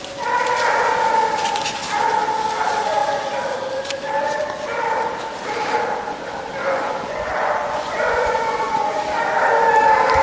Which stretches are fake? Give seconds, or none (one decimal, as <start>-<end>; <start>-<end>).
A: 6.6-9.0